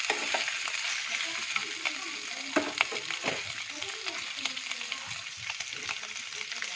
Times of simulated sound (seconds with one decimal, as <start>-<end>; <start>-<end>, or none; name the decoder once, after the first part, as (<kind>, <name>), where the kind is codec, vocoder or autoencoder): none